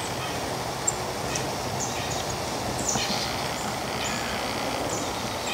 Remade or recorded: recorded